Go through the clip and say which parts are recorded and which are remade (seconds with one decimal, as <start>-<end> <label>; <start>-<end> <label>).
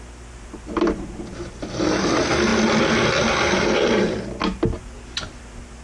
0.0-5.8 recorded